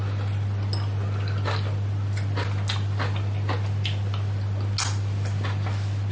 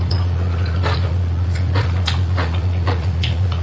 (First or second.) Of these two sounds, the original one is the first